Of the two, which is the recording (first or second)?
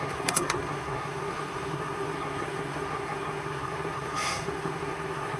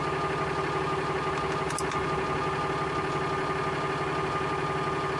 second